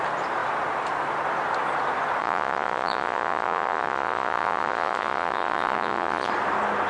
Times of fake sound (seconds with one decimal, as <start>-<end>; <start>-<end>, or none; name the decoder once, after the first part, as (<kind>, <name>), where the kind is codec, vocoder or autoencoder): 2.2-6.3 (vocoder, Vocos)